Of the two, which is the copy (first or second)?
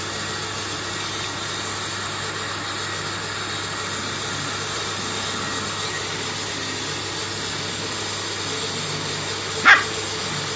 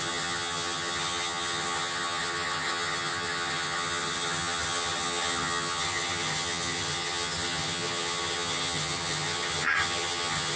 second